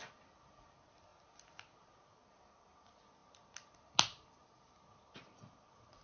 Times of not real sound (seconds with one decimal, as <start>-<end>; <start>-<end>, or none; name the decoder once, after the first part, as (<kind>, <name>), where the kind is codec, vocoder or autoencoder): none